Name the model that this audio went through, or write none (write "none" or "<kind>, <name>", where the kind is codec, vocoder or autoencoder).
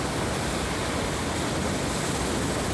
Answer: none